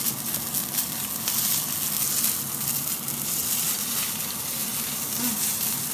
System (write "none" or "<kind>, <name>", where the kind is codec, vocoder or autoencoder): none